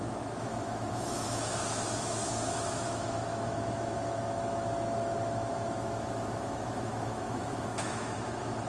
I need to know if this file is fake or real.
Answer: fake